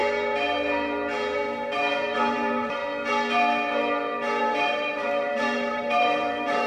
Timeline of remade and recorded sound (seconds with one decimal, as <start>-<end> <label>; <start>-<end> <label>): 0.0-1.9 recorded; 1.9-2.8 remade; 2.8-4.4 recorded; 4.4-6.7 remade